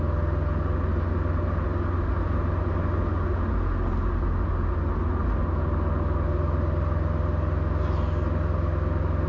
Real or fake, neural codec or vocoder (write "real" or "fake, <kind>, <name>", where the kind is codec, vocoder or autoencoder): real